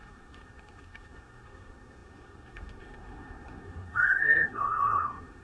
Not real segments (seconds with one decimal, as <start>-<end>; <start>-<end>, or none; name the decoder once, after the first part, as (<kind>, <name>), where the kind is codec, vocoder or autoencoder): 0.0-5.4 (codec, SNAC)